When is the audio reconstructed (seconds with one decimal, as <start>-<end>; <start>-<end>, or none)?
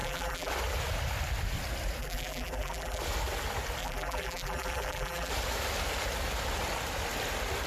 0.0-0.5; 2.0-3.0; 3.8-5.3